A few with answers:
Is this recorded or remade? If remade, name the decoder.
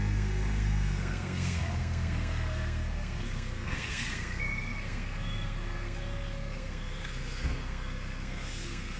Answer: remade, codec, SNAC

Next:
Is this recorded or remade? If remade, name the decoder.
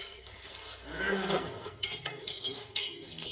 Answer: remade, codec, SNAC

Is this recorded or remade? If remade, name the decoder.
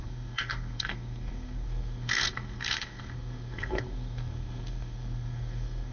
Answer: remade, codec, SNAC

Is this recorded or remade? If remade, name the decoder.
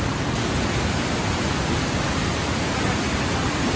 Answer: recorded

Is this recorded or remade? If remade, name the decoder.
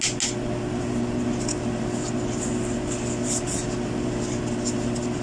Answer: recorded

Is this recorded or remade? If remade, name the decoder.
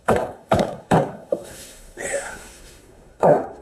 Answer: remade, codec, SNAC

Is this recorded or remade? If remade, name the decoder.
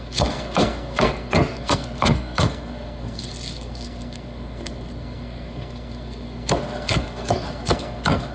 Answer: remade, codec, SNAC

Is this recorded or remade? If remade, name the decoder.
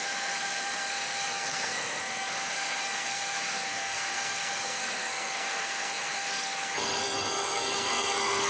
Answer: remade, codec, SNAC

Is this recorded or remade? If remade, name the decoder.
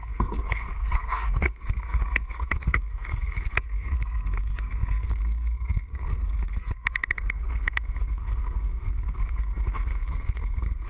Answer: remade, codec, SNAC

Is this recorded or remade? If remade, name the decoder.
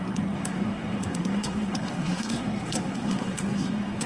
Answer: remade, codec, SNAC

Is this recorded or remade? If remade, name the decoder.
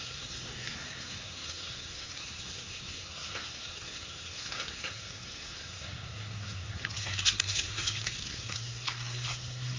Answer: remade, codec, SNAC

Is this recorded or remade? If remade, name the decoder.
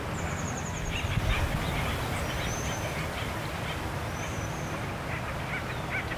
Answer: recorded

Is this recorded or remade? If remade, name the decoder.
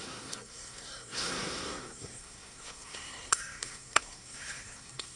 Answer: remade, codec, SNAC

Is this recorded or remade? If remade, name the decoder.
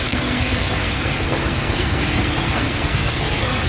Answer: remade, codec, SNAC